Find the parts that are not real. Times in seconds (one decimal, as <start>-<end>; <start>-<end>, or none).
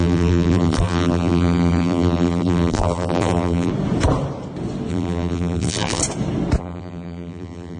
0.0-3.7; 4.9-6.0; 6.6-7.8